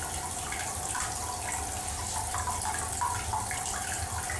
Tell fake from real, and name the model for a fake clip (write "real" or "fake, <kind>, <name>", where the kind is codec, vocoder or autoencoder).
fake, vocoder, BigVGAN v2